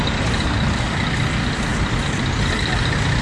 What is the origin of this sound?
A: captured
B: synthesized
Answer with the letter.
A